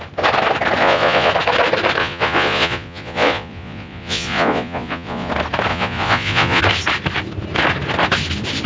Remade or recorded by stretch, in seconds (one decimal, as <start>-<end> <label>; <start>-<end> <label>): 0.0-0.8 recorded; 0.8-1.3 remade; 1.3-2.0 recorded; 2.0-5.3 remade; 5.3-5.7 recorded; 5.7-6.6 remade; 6.6-8.7 recorded